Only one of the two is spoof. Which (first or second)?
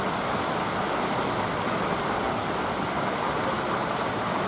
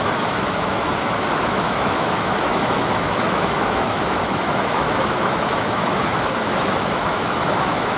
second